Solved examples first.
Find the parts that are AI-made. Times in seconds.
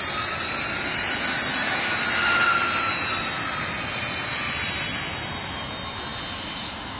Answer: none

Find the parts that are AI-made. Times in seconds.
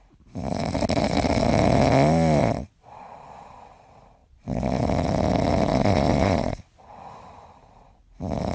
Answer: 2.4-3.6 (vocoder, Vocos); 4.2-4.8; 5.7-6.6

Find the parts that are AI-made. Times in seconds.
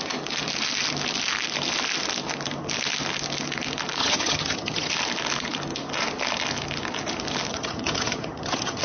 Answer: 4.0-4.9 (vocoder, HiFi-GAN); 7.5-8.8